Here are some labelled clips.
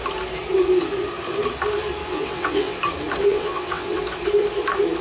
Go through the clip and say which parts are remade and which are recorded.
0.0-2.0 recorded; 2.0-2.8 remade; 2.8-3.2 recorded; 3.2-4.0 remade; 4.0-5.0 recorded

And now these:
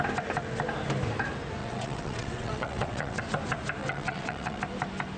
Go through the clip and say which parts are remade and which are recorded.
0.0-1.6 recorded; 1.6-3.2 remade; 3.2-3.8 recorded; 3.8-4.6 remade; 4.6-5.2 recorded

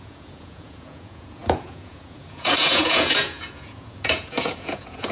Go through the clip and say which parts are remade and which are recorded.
0.0-5.1 remade

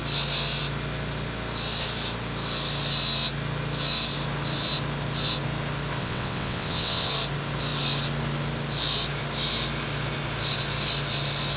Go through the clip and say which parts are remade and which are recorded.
0.0-6.0 recorded; 6.0-7.1 remade; 7.1-11.6 recorded

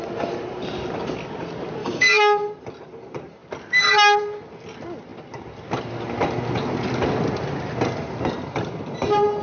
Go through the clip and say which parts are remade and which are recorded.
0.0-1.8 recorded; 1.8-2.5 remade; 2.5-9.4 recorded

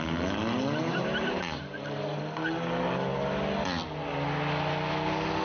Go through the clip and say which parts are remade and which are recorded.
0.0-0.8 recorded; 0.8-2.2 remade; 2.2-5.4 recorded